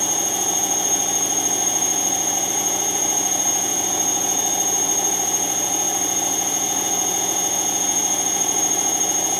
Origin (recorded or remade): remade